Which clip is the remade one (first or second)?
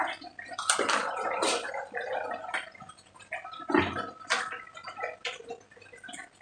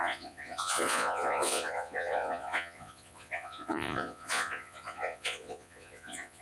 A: second